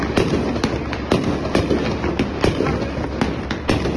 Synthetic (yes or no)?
no